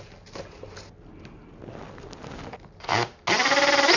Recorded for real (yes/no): yes